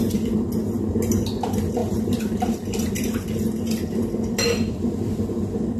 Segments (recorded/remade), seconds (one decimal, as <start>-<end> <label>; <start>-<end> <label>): 0.0-1.8 recorded; 1.8-5.2 remade; 5.2-5.8 recorded